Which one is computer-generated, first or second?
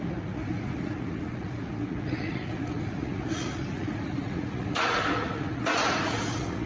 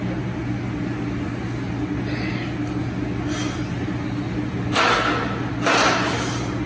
first